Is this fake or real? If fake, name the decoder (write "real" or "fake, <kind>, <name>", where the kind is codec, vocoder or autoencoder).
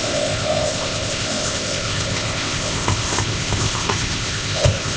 fake, codec, ZipCodec